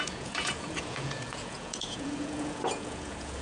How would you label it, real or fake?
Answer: fake